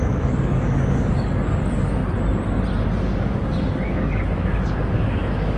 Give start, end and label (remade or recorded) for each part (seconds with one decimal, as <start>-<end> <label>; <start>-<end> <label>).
0.0-2.0 remade; 2.0-3.2 recorded; 3.2-5.6 remade

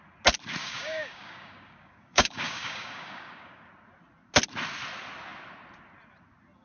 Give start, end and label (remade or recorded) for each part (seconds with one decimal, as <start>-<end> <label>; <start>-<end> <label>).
0.0-0.6 recorded; 0.6-3.7 remade; 3.7-6.6 recorded